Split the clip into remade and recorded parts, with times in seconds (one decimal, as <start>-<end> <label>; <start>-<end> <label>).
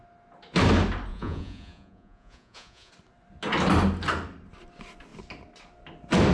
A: 0.0-1.1 recorded; 1.1-2.9 remade; 2.9-6.3 recorded